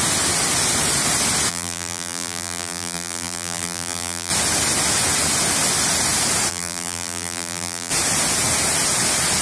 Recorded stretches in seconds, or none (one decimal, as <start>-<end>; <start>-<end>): 0.0-1.5; 4.3-6.5; 7.9-9.4